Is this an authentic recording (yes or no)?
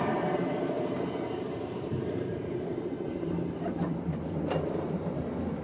no